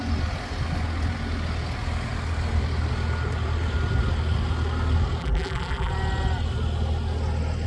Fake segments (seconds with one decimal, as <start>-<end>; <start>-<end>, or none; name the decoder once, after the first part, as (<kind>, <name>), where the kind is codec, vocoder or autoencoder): 5.2-5.9 (vocoder, BigVGAN v2)